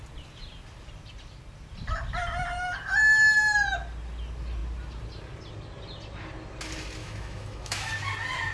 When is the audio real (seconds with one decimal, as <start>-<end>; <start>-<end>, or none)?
0.0-7.0; 7.9-8.5